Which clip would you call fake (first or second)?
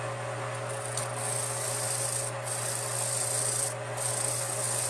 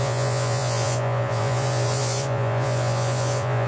second